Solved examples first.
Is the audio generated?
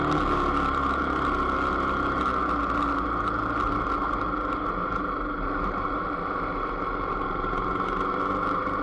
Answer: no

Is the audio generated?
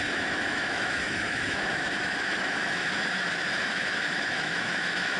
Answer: yes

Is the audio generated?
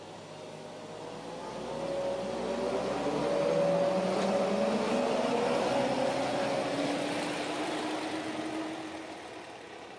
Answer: no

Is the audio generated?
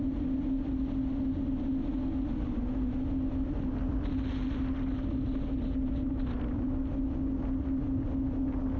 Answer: no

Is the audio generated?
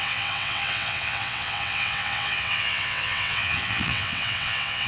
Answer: yes